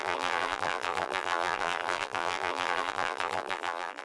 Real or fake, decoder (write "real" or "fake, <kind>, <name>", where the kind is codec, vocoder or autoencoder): fake, vocoder, BigVGAN v2